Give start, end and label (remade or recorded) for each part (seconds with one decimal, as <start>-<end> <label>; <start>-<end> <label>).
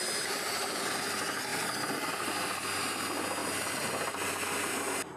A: 0.0-3.4 recorded; 3.4-3.9 remade; 3.9-5.2 recorded